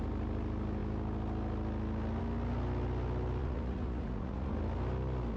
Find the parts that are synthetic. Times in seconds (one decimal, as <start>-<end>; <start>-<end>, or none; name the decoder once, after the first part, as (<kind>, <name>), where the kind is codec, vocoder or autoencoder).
3.4-4.5 (vocoder, Vocos)